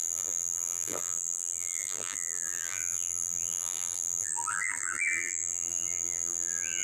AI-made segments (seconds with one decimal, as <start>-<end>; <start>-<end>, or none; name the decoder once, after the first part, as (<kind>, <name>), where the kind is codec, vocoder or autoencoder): 0.0-6.8 (vocoder, BigVGAN v2)